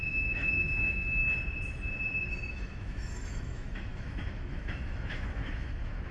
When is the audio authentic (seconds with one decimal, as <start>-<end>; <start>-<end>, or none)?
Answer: 1.2-2.5